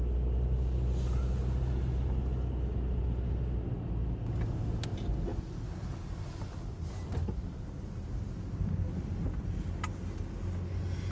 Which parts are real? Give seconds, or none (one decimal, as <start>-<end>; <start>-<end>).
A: 0.0-11.1